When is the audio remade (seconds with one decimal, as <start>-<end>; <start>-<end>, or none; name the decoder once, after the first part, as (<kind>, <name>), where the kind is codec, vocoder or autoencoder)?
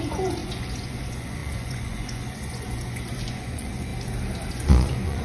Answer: 0.0-3.9 (vocoder, Vocos); 4.5-5.2